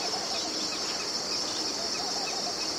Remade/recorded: recorded